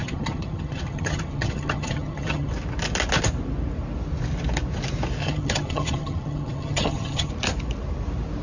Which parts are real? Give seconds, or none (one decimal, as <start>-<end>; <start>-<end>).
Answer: 2.5-5.2; 7.3-8.4